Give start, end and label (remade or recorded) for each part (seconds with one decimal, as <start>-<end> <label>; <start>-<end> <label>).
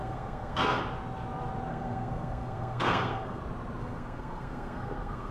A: 0.0-0.8 remade; 0.8-1.7 recorded; 1.7-3.4 remade; 3.4-3.8 recorded; 3.8-5.3 remade